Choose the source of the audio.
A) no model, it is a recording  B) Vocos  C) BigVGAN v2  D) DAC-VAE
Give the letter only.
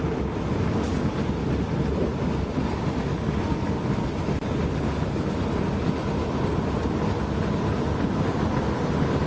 A